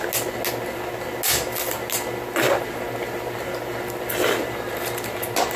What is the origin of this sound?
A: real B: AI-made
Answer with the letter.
A